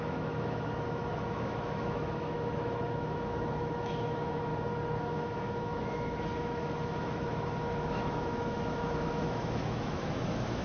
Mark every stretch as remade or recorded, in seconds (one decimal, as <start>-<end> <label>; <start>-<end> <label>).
0.0-4.5 remade; 4.5-5.0 recorded; 5.0-10.6 remade